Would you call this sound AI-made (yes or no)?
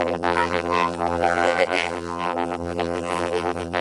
yes